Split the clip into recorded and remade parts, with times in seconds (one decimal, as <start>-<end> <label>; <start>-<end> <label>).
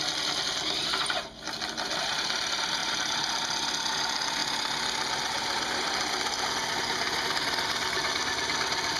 0.0-2.8 recorded; 2.8-3.4 remade; 3.4-9.0 recorded